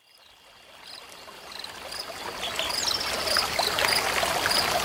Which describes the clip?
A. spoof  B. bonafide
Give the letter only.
B